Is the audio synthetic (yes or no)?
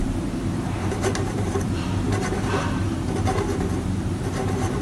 yes